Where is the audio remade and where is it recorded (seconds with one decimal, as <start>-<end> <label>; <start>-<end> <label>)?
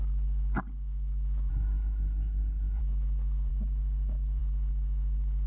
0.0-1.5 recorded; 1.5-2.8 remade; 2.8-5.5 recorded